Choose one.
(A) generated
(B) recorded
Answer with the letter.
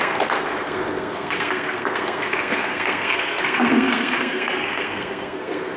A